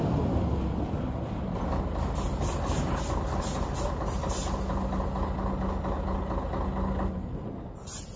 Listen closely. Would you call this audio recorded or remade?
recorded